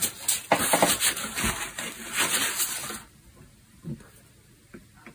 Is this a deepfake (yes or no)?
no